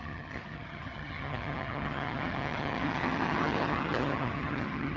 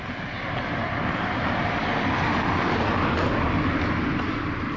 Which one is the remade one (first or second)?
first